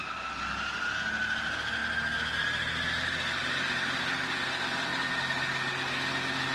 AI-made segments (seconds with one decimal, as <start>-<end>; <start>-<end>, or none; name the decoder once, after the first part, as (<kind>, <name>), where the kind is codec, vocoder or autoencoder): none

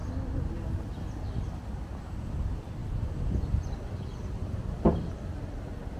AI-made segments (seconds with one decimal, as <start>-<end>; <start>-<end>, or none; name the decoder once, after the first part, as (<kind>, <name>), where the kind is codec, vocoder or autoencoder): 2.8-5.1 (vocoder, BigVGAN v2)

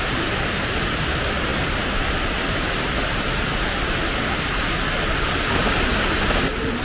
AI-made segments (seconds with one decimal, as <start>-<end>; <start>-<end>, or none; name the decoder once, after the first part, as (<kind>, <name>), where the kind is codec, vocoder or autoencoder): none

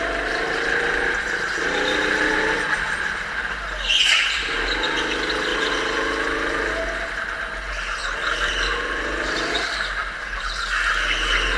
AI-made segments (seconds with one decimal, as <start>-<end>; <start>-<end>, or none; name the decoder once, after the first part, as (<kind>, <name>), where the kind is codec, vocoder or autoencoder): 5.5-6.6 (vocoder, BigVGAN v2); 10.0-10.6

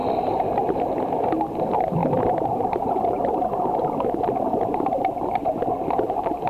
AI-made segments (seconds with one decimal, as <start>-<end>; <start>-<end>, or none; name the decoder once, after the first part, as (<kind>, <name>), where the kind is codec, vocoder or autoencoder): 0.0-0.8 (vocoder, BigVGAN v2); 2.0-3.7

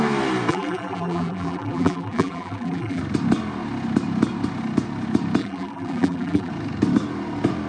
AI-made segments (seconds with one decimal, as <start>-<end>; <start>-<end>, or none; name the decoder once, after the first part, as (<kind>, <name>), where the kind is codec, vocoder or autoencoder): 0.5-3.0 (vocoder, BigVGAN v2); 5.4-6.5